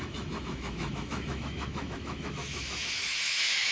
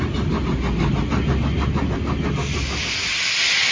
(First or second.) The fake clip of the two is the first